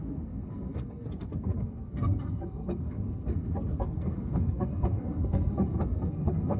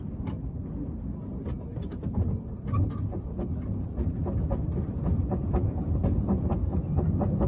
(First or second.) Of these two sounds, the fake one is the first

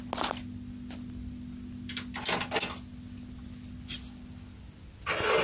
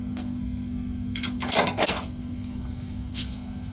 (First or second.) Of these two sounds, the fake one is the second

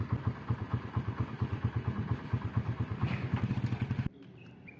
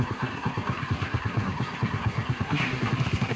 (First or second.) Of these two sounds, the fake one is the second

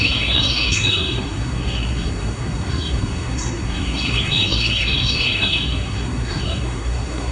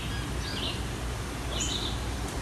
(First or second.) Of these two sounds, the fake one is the first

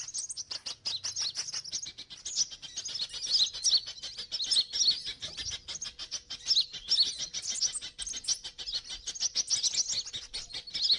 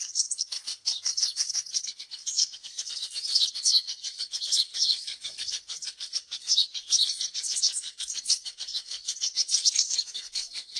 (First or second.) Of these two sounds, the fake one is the second